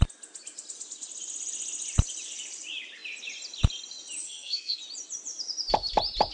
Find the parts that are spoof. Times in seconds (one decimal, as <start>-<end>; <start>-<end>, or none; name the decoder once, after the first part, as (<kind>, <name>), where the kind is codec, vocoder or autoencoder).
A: 4.2-4.8 (codec, SNAC)